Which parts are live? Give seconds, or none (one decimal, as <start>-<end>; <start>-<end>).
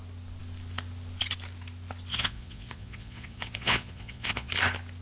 0.0-2.1; 4.5-5.0